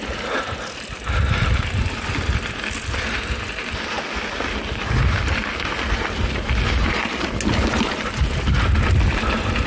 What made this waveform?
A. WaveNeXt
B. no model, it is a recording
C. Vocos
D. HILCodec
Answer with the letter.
B